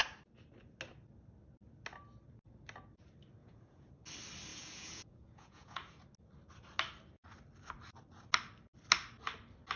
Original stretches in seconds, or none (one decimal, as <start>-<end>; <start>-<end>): 0.0-3.4; 3.9-4.5; 5.9-9.8